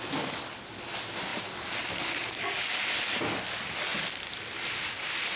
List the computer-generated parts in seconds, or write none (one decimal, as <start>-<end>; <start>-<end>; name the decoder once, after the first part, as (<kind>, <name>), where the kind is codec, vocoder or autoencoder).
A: none